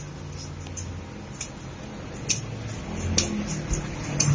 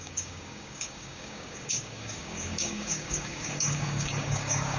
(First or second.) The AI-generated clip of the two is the second